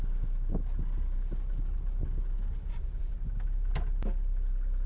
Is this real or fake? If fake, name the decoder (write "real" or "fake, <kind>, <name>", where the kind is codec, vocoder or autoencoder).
real